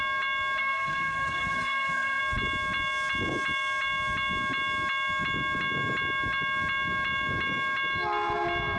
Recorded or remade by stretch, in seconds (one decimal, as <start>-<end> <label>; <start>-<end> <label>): 0.0-0.6 recorded; 0.6-2.2 remade; 2.2-8.8 recorded